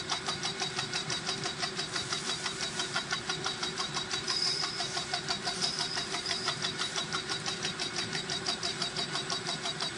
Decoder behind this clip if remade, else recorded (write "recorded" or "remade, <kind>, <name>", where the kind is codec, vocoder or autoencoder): remade, vocoder, BigVGAN v2